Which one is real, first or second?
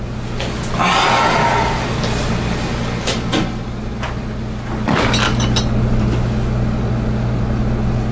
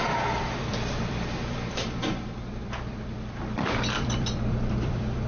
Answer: first